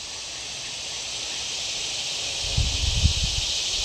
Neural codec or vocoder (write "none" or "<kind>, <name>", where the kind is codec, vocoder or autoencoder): none